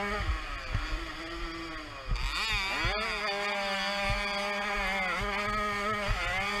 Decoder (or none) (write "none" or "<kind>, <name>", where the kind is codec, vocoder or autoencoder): none